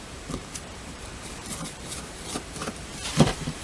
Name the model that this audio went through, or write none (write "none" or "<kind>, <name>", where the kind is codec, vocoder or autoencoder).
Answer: vocoder, BigVGAN v2